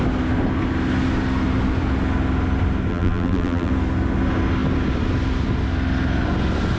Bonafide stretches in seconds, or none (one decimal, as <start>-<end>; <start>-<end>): 0.0-2.9; 3.7-6.8